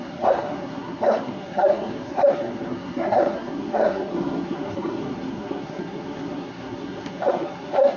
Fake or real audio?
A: fake